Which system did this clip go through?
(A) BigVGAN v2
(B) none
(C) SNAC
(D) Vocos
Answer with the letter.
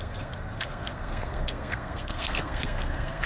C